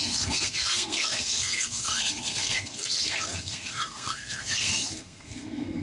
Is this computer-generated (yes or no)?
yes